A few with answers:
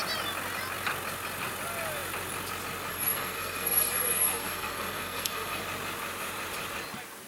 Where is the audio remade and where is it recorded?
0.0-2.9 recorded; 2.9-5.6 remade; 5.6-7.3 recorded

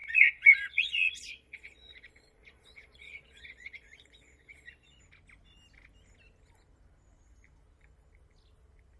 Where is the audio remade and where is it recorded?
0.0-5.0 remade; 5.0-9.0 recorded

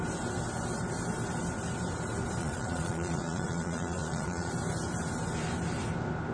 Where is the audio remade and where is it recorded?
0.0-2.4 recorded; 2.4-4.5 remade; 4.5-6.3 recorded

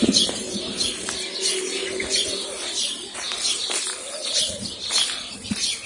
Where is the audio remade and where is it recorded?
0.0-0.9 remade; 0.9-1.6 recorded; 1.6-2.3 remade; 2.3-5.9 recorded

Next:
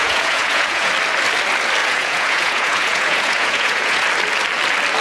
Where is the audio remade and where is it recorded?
0.0-0.9 remade; 0.9-1.8 recorded; 1.8-4.0 remade; 4.0-5.0 recorded